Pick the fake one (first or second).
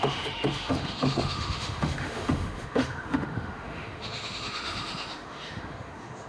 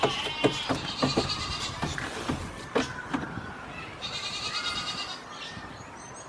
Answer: first